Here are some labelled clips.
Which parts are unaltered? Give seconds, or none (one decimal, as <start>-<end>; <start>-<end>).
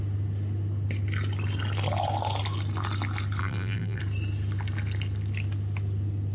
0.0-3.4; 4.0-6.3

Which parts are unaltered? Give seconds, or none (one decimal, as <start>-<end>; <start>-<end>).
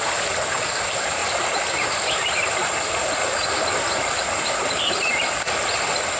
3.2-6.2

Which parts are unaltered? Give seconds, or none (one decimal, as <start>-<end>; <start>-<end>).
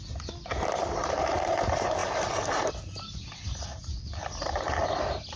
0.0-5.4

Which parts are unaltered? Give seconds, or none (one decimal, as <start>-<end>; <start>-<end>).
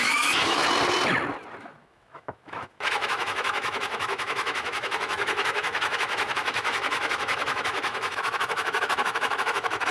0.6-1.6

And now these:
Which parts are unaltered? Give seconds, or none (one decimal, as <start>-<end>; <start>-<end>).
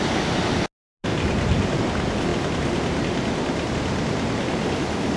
0.0-1.1; 1.8-5.2